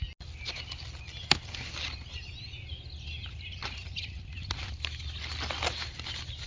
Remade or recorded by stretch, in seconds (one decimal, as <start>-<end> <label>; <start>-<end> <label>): 0.0-6.5 recorded